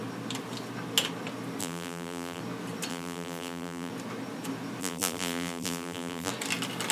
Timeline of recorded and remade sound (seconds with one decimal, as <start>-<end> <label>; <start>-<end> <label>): 0.0-1.6 recorded; 1.6-2.4 remade; 2.4-2.9 recorded; 2.9-3.9 remade; 3.9-4.8 recorded; 4.8-6.3 remade; 6.3-6.9 recorded